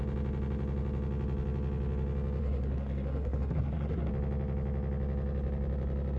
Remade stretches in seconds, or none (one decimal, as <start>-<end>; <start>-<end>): 2.4-4.1